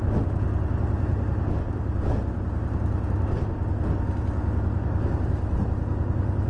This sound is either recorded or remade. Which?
recorded